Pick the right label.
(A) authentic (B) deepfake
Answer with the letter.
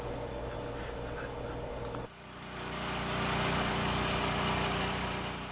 A